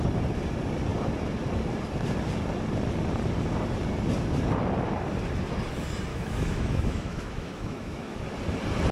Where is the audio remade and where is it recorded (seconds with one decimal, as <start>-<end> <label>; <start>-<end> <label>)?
0.0-6.1 recorded; 6.1-8.2 remade; 8.2-8.9 recorded